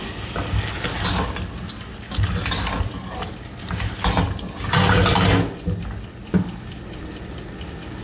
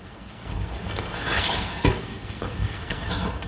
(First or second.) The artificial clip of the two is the second